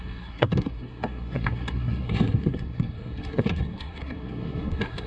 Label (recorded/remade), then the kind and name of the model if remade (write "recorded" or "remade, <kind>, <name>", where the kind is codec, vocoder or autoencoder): remade, codec, SNAC